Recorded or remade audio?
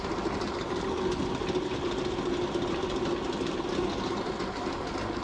recorded